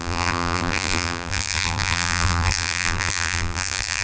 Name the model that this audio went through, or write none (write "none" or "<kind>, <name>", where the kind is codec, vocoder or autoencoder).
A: vocoder, BigVGAN v2